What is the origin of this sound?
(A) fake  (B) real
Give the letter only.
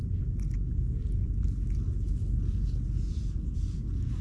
B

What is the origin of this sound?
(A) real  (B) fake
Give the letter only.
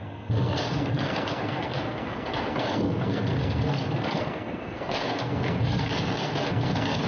B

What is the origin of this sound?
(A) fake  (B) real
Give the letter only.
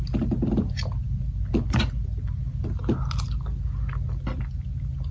B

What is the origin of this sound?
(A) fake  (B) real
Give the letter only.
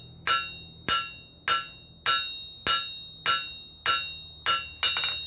B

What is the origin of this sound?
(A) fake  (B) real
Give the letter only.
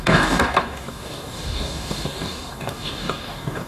A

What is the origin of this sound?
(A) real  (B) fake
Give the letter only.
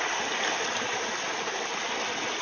A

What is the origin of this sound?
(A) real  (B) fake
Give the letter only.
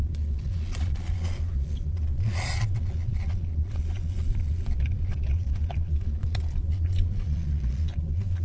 B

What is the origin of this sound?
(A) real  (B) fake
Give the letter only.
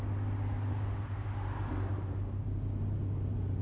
A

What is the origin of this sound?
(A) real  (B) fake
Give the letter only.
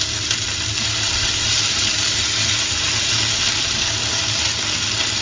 A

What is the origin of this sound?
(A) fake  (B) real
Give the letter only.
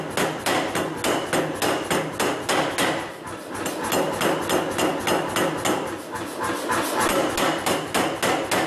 B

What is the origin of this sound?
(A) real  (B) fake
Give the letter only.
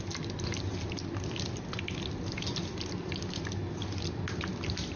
A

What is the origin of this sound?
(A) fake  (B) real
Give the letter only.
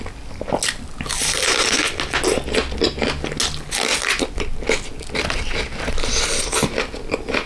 B